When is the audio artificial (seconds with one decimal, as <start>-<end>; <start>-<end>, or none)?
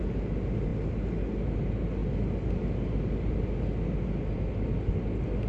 none